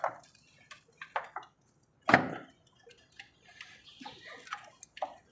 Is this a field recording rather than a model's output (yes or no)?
yes